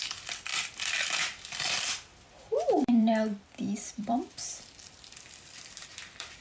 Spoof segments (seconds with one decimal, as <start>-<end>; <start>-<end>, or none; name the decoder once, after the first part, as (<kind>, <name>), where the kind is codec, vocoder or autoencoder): 0.0-6.4 (vocoder, BigVGAN v2)